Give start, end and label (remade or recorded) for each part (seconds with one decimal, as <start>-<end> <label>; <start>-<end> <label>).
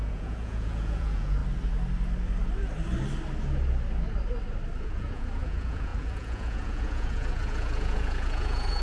0.0-1.4 remade; 1.4-4.8 recorded; 4.8-8.8 remade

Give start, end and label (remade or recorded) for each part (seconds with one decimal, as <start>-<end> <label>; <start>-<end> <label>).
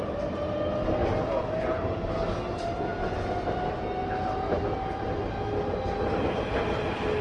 0.0-7.2 recorded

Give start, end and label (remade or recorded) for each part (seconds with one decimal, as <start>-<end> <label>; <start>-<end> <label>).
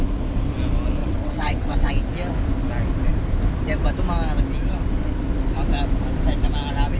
0.0-1.0 recorded; 1.0-1.9 remade; 1.9-7.0 recorded